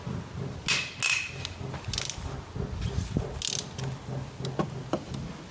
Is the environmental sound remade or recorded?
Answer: recorded